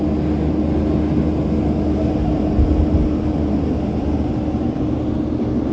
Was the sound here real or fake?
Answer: real